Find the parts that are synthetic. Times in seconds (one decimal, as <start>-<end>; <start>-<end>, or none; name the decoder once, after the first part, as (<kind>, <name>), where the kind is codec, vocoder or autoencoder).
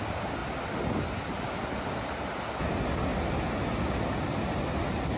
none